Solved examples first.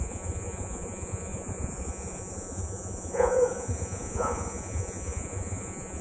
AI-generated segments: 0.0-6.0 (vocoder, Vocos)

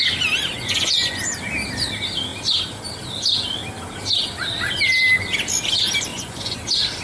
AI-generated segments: 0.5-1.2 (vocoder, Vocos); 6.1-6.6

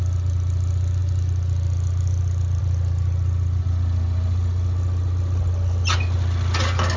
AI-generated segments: none